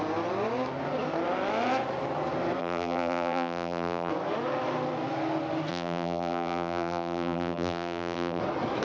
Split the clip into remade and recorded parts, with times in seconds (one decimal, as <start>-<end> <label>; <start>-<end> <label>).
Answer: 0.0-2.6 recorded; 2.6-4.1 remade; 4.1-5.7 recorded; 5.7-8.4 remade; 8.4-8.8 recorded